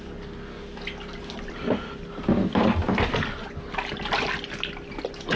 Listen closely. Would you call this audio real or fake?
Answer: real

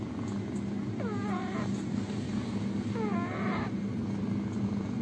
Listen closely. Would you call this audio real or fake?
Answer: real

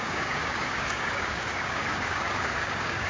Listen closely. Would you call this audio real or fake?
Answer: fake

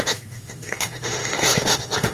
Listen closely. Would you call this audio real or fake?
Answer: fake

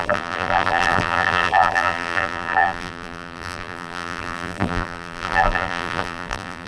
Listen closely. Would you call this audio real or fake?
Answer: fake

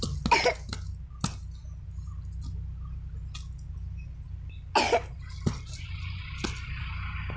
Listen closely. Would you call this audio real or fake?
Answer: real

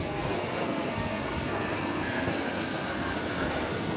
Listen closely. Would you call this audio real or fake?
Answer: fake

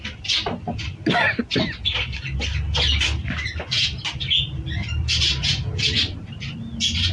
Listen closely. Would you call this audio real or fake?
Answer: real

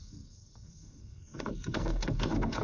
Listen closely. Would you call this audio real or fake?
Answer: fake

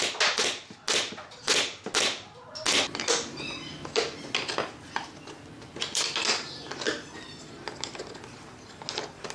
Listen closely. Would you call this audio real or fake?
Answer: real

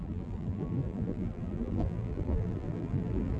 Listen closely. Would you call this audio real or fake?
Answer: fake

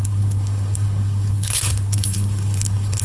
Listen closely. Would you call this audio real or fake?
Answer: fake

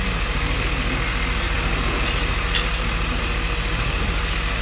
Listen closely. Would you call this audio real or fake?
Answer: real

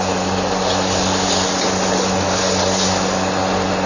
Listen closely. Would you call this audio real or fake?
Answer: real